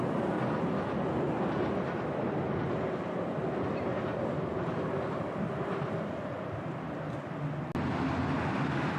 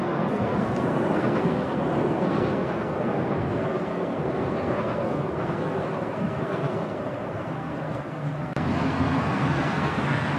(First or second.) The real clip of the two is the first